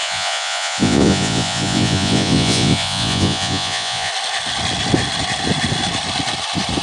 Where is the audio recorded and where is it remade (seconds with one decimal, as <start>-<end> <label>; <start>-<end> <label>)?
0.0-4.1 remade; 4.1-6.8 recorded